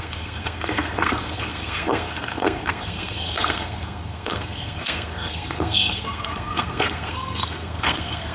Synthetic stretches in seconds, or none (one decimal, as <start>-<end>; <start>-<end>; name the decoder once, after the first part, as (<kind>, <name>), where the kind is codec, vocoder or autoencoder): 0.0-8.3 (codec, SNAC)